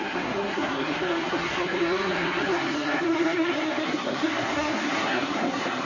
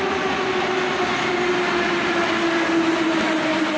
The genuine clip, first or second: second